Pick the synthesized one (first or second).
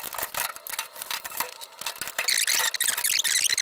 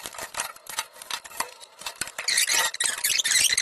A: second